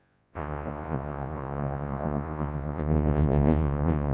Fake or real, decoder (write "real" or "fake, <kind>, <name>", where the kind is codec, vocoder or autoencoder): fake, vocoder, Vocos